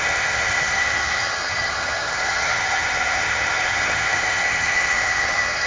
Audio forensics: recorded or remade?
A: remade